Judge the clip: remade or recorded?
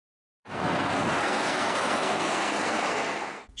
remade